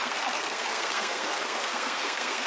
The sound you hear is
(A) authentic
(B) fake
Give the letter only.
B